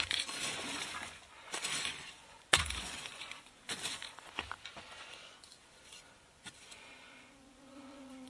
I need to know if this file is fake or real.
fake